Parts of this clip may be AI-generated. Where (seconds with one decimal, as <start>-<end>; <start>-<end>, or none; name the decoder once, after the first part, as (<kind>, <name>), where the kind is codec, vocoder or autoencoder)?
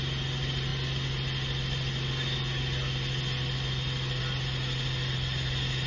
none